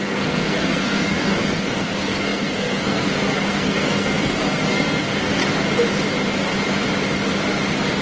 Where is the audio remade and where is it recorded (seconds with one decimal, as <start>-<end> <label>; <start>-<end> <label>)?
0.0-5.4 remade; 5.4-8.0 recorded